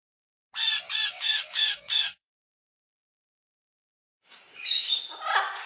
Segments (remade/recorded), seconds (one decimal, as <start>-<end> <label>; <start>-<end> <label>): 0.0-1.1 recorded; 1.1-2.3 remade; 2.3-4.0 recorded; 4.0-5.0 remade; 5.0-5.7 recorded